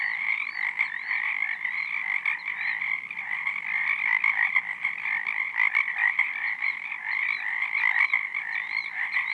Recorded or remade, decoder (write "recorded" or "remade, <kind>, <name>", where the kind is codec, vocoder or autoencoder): recorded